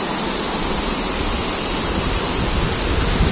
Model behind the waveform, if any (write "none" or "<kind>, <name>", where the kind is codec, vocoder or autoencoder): none